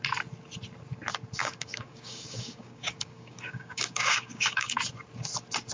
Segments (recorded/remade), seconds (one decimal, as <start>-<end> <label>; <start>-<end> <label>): 0.0-1.4 recorded; 1.4-4.8 remade; 4.8-5.7 recorded